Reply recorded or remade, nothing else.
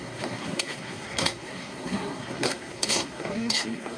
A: remade